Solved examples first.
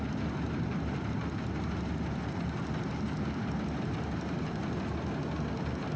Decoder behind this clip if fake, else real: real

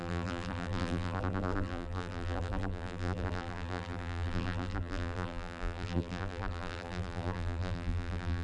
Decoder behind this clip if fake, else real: fake, vocoder, BigVGAN v2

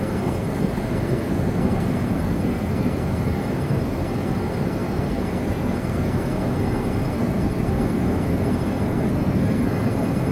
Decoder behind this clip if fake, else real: fake, codec, SNAC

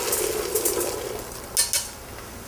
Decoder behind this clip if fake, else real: real